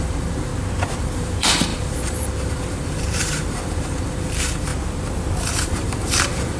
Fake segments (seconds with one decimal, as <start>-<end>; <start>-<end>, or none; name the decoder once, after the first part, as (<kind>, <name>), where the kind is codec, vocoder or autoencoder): 0.0-0.5 (vocoder, BigVGAN v2); 1.0-4.7; 5.4-6.6